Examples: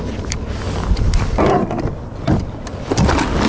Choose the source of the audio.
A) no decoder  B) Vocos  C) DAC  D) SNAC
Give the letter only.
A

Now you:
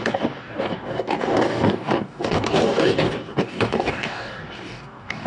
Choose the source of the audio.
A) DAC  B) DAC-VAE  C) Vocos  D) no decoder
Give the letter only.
A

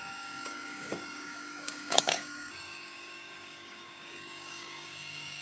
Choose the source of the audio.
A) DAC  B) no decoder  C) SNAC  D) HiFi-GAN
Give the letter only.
A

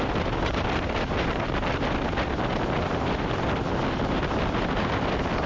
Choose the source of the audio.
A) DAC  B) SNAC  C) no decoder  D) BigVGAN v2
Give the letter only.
C